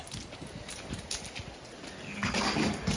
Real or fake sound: real